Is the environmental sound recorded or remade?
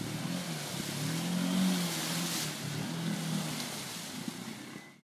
recorded